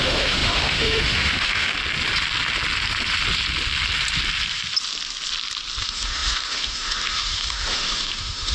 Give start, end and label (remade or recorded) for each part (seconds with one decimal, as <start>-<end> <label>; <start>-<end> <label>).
0.0-1.8 remade; 1.8-5.8 recorded; 5.8-8.5 remade